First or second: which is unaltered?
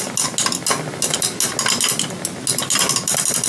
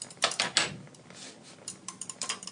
first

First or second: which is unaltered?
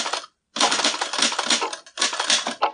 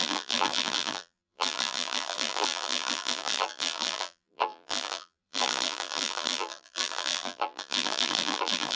first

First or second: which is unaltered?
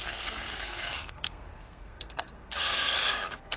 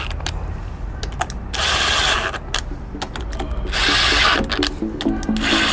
second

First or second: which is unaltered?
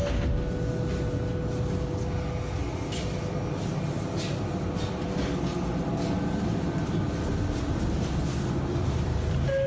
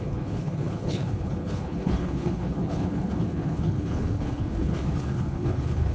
first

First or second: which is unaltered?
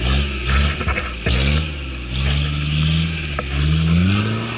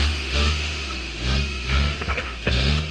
first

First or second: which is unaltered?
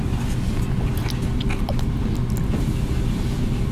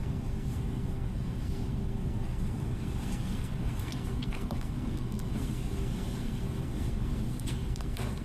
first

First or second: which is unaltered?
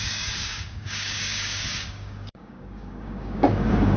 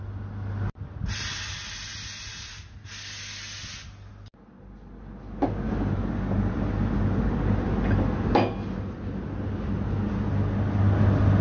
second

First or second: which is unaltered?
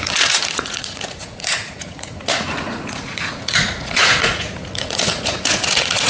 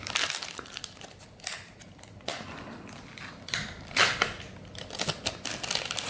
second